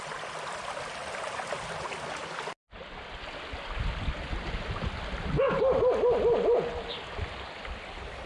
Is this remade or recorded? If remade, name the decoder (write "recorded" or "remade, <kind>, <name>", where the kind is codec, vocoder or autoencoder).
recorded